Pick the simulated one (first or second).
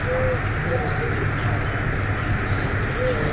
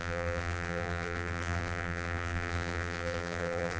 second